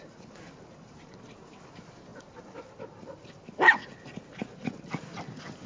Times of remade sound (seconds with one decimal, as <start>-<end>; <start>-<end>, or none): none